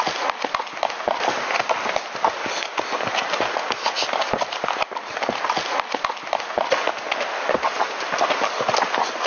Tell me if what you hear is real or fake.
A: real